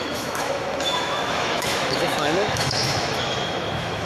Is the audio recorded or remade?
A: remade